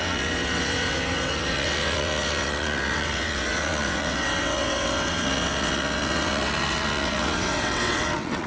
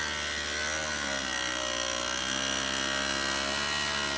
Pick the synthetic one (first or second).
first